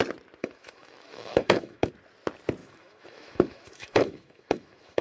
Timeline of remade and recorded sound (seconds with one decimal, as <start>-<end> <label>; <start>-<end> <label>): 0.0-0.4 recorded; 0.4-1.9 remade; 1.9-2.6 recorded; 2.6-5.0 remade